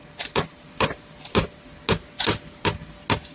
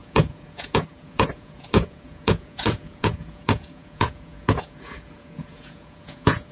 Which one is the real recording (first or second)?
first